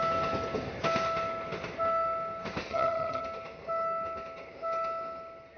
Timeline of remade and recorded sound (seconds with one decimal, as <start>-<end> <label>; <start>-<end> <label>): 0.0-2.7 recorded; 2.7-3.2 remade; 3.2-5.6 recorded